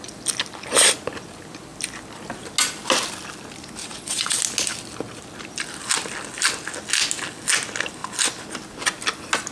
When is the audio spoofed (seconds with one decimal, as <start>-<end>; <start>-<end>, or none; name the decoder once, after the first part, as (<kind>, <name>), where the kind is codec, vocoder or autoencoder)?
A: 3.8-4.4 (vocoder, WaveNeXt)